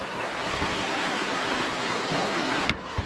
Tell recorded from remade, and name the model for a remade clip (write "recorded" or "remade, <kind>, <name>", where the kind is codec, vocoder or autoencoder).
remade, codec, SNAC